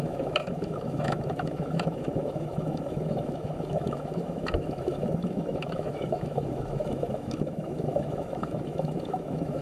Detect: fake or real fake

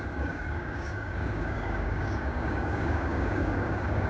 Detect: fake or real fake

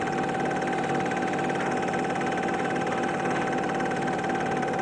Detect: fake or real real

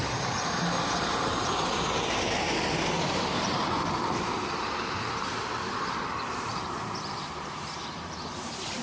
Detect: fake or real fake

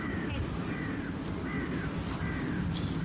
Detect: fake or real real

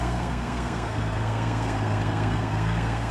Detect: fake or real fake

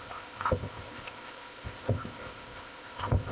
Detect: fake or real fake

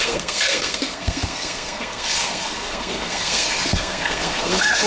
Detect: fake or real fake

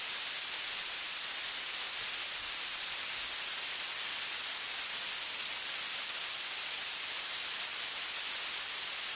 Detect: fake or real real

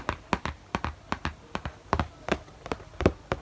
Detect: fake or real real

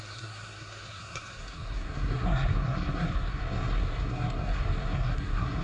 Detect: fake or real fake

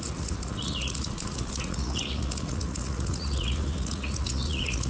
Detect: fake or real fake